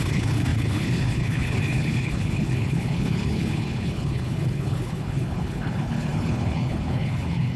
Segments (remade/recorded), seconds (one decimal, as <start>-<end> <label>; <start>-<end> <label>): 0.0-7.6 remade